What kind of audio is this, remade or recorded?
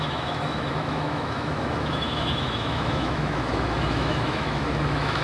remade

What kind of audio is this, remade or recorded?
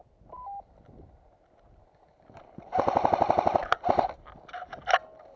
recorded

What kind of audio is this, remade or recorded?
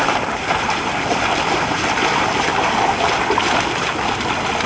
recorded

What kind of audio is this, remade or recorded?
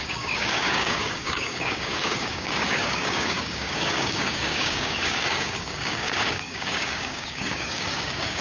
remade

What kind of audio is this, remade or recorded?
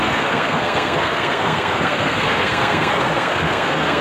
remade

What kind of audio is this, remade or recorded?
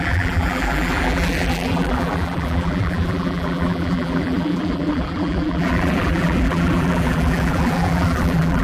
remade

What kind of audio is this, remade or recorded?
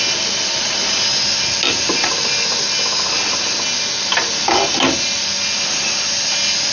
recorded